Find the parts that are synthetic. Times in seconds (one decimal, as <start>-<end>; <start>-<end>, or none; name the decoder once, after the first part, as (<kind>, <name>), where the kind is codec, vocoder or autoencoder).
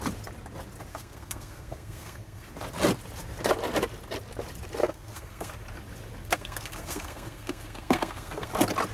0.9-2.5 (codec, SNAC); 4.8-5.5; 6.2-8.5